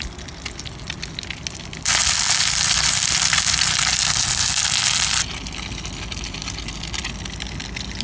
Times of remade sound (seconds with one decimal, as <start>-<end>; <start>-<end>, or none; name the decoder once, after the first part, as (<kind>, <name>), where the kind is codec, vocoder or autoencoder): none